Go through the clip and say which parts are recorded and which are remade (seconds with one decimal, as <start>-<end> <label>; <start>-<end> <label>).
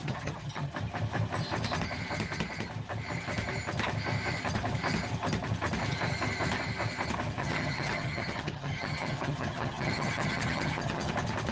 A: 0.0-0.7 remade; 0.7-7.4 recorded; 7.4-11.1 remade; 11.1-11.5 recorded